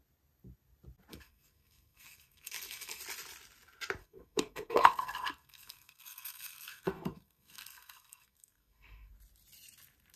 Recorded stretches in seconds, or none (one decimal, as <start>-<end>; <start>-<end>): 0.0-1.1; 3.0-4.0; 9.1-10.2